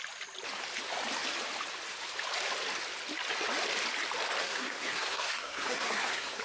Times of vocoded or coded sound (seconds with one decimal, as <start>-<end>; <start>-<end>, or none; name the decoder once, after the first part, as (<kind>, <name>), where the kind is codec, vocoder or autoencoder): 4.4-6.4 (codec, SNAC)